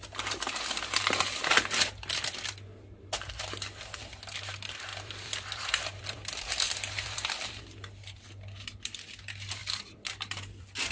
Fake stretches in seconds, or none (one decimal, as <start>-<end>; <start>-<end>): 4.9-7.6; 9.6-10.9